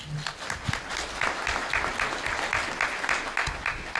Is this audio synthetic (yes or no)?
no